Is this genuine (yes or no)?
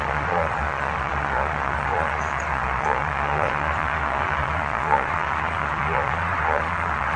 no